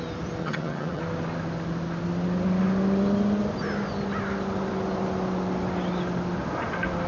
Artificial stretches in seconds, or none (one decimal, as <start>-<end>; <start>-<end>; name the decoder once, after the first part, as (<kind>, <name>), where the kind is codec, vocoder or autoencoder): 0.4-1.0 (vocoder, HiFi-GAN)